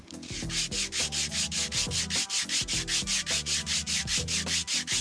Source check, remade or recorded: recorded